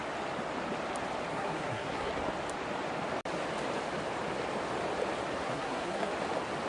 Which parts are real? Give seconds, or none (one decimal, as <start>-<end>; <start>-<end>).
0.0-1.3; 2.1-5.4; 6.1-6.7